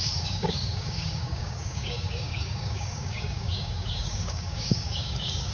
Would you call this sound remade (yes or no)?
yes